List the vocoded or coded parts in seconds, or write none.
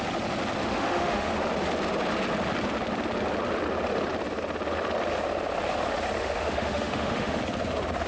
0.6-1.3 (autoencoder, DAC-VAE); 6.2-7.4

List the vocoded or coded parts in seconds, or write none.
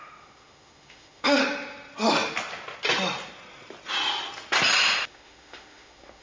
0.0-1.4 (autoencoder, DAC-VAE); 5.1-6.2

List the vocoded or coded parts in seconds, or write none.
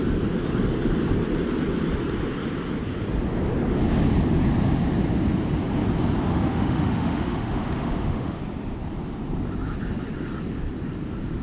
6.3-8.4 (autoencoder, DAC-VAE)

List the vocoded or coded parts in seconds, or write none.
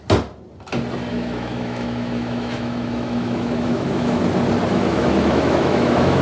1.1-4.2 (autoencoder, DAC-VAE); 4.7-6.2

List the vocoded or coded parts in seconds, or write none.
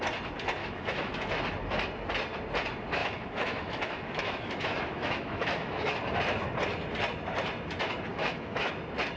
0.6-1.3 (autoencoder, DAC-VAE); 3.0-6.0; 8.1-8.7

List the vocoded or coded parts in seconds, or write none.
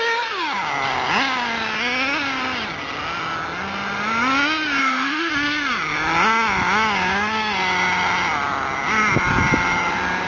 4.8-5.3 (autoencoder, DAC-VAE)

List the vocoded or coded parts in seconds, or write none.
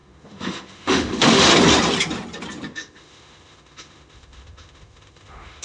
0.0-1.5 (autoencoder, DAC-VAE); 2.7-5.6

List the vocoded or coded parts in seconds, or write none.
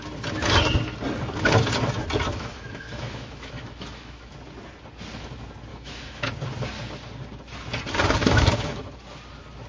2.3-4.3 (autoencoder, DAC-VAE); 5.7-6.3; 8.2-8.8